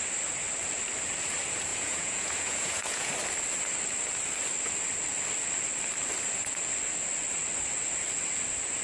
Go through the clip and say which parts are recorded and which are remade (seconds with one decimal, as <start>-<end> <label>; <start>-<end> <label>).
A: 0.0-1.7 recorded; 1.7-3.1 remade; 3.1-8.8 recorded